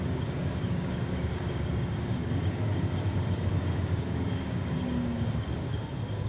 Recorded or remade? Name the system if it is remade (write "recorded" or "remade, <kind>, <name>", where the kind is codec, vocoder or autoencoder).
remade, codec, DAC